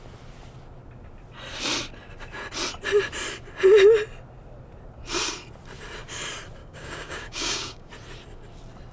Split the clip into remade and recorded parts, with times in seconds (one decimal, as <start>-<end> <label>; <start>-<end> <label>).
0.0-6.6 recorded; 6.6-7.9 remade; 7.9-8.9 recorded